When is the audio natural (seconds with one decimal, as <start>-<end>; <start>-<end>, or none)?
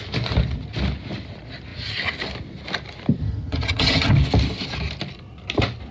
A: 0.0-3.2; 4.1-5.9